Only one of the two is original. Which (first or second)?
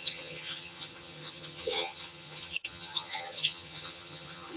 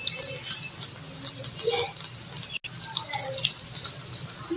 second